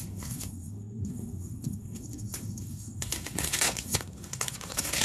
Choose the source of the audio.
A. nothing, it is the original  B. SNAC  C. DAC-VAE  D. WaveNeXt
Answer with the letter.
B